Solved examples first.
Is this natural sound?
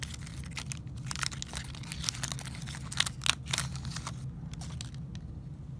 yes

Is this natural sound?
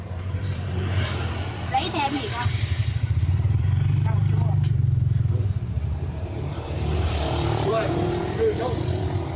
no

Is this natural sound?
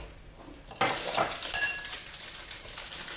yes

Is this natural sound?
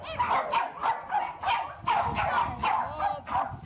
yes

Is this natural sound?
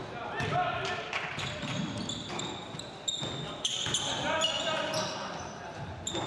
no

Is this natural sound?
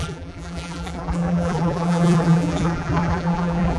no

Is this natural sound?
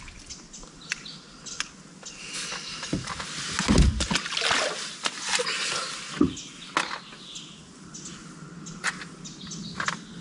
yes